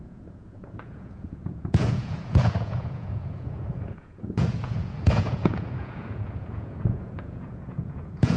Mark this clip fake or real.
fake